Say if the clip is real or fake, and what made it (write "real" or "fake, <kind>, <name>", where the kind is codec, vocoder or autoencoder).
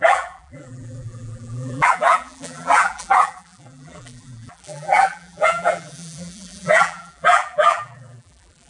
fake, vocoder, BigVGAN v2